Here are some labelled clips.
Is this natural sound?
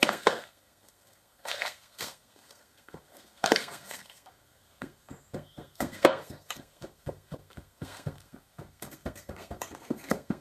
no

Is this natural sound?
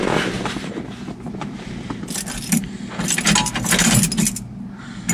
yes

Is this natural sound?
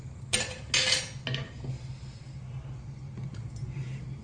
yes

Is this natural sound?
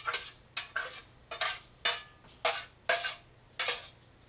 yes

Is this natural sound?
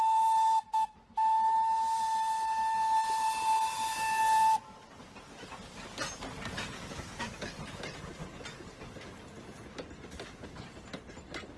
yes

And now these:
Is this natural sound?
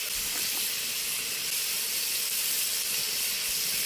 yes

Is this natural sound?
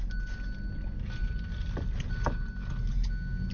yes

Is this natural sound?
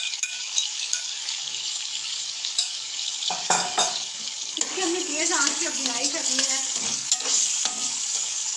no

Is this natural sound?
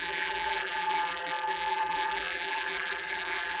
no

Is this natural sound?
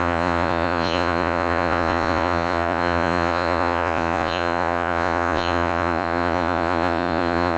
no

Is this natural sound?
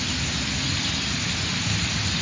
yes